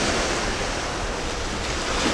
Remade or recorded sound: recorded